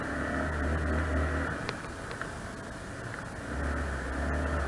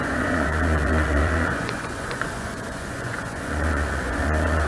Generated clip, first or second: second